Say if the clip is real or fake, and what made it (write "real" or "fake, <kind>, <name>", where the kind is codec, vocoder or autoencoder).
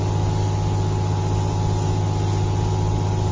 real